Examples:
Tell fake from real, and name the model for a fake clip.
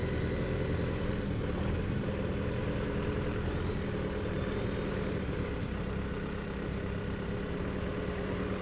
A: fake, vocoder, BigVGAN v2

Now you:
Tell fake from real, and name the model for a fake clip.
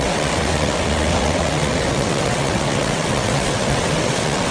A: fake, vocoder, WaveNeXt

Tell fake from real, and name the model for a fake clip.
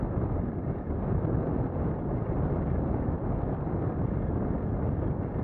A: real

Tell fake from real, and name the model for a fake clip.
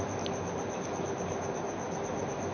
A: real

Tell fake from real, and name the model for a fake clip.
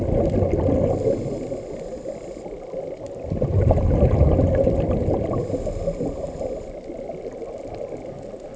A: real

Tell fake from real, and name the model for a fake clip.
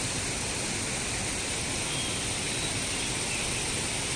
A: real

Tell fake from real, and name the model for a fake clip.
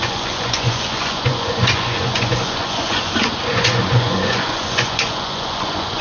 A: fake, vocoder, Vocos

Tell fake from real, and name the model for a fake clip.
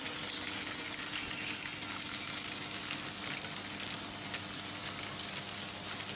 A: real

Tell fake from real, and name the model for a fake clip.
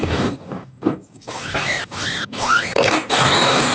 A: fake, codec, DAC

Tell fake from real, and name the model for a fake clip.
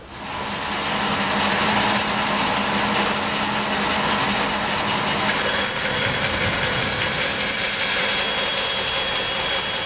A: real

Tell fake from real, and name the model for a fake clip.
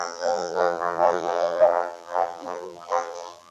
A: fake, vocoder, BigVGAN v2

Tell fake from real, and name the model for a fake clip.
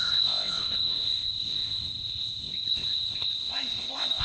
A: fake, codec, ZipCodec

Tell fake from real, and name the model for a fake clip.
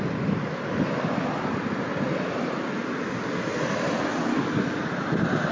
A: real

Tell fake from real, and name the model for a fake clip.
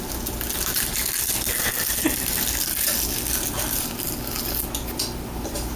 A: real